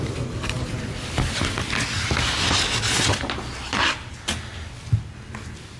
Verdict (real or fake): real